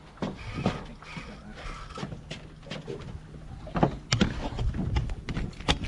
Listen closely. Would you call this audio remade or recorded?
recorded